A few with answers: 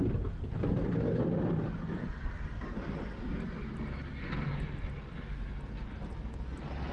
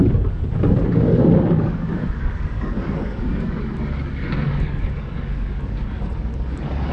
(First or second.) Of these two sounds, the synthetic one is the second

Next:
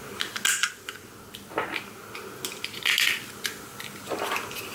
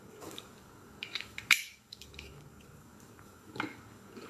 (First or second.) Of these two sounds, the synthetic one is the second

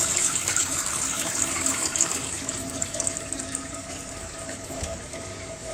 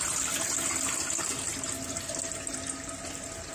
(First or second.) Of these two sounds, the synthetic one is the first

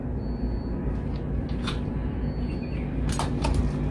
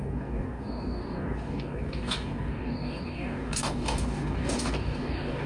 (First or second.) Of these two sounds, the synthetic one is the second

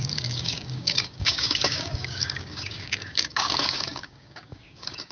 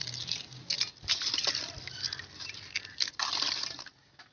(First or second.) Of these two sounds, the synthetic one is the first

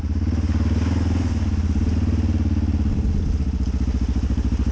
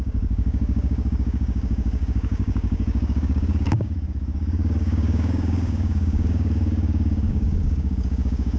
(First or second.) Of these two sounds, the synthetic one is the second